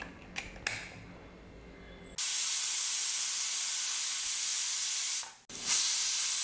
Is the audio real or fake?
real